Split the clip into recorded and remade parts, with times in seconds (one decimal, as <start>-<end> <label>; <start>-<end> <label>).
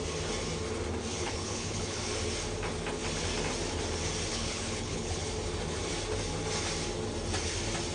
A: 0.0-1.1 recorded; 1.1-2.0 remade; 2.0-4.3 recorded; 4.3-5.2 remade; 5.2-7.9 recorded